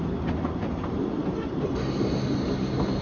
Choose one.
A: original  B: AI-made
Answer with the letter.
A